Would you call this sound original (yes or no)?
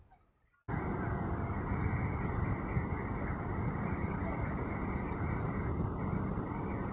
yes